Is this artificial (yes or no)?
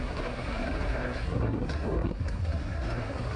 yes